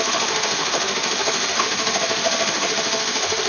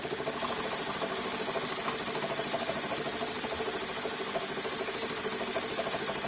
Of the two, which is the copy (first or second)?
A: first